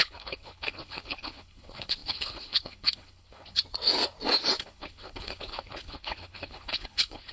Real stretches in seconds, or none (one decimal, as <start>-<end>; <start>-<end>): 3.6-4.6